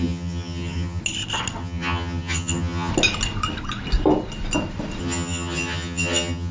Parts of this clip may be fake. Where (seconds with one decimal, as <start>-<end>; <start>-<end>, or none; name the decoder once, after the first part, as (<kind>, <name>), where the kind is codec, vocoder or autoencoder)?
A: 0.0-1.0 (vocoder, HiFi-GAN); 1.6-2.9; 5.0-6.5